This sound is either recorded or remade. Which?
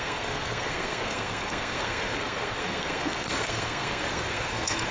remade